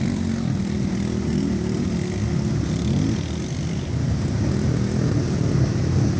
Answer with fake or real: real